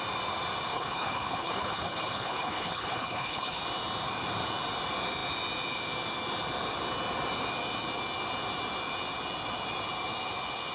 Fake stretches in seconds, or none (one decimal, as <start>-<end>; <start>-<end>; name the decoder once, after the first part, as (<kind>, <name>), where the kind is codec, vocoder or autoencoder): 0.7-3.6 (codec, HILCodec)